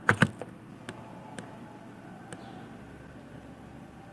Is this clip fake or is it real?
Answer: real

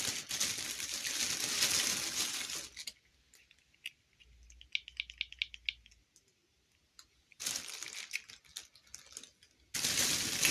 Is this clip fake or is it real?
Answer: real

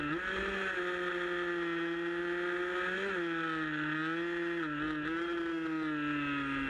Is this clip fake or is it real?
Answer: real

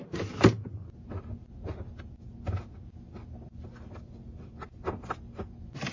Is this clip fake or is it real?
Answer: real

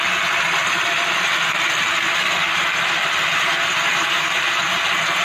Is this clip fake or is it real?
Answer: real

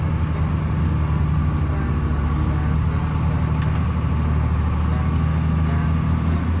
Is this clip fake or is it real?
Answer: real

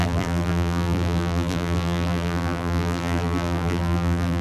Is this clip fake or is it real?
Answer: fake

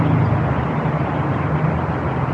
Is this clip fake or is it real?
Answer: real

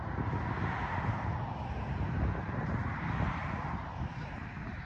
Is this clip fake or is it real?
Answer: real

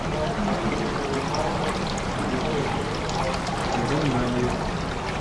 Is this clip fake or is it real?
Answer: real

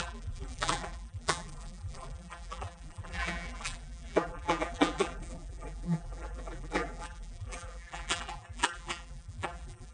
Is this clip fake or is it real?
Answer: fake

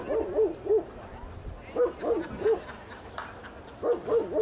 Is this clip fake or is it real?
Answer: real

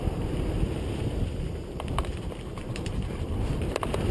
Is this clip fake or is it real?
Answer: fake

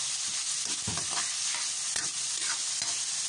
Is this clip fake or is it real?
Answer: real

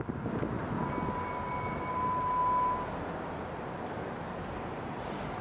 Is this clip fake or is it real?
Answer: real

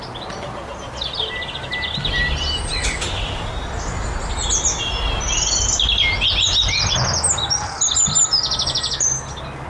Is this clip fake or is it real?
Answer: real